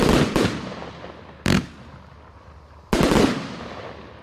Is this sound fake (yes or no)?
no